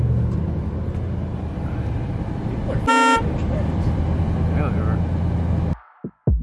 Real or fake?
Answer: real